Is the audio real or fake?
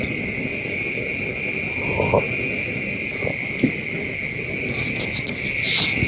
real